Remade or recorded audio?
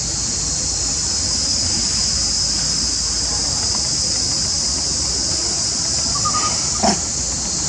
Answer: recorded